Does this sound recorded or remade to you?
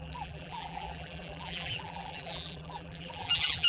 remade